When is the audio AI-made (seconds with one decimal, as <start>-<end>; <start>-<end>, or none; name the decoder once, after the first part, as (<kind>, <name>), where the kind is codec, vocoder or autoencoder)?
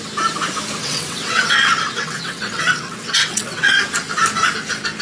0.8-3.8 (vocoder, WaveNeXt)